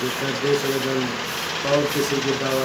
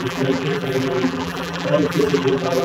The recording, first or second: first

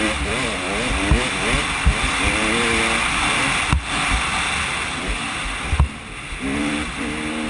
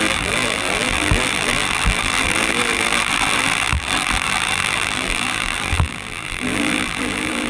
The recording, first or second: first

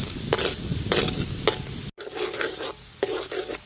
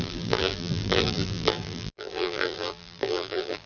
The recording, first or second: first